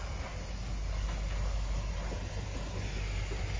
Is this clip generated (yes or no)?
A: no